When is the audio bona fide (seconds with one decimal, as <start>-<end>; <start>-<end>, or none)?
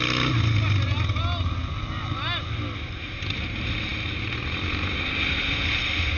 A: 0.0-6.2